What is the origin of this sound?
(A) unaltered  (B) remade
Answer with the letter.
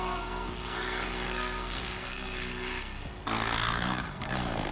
B